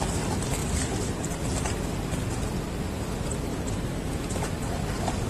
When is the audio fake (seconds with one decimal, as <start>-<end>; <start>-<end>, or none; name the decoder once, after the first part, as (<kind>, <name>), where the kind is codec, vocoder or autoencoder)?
0.6-1.3 (vocoder, BigVGAN v2)